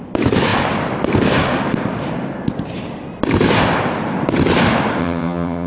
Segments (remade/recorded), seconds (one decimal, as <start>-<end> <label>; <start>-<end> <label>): 0.0-5.0 recorded; 5.0-5.7 remade